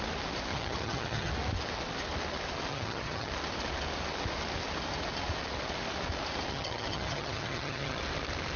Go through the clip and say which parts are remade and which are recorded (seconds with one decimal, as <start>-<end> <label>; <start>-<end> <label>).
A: 0.0-0.5 recorded; 0.5-1.3 remade; 1.3-2.7 recorded; 2.7-3.3 remade; 3.3-6.5 recorded; 6.5-8.0 remade; 8.0-8.6 recorded